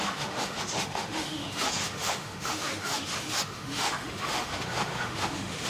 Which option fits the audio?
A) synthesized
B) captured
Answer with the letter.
A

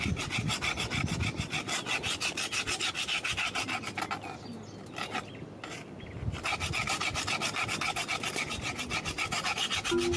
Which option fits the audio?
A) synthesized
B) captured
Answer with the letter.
B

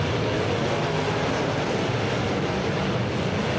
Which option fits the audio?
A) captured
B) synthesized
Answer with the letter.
A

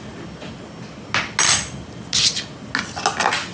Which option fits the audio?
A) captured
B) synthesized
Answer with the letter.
A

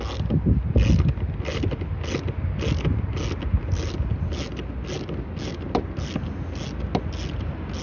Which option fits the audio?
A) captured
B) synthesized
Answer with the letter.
A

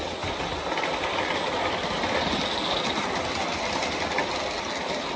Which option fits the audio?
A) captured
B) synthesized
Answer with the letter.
A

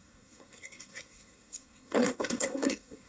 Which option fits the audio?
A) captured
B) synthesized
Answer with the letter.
B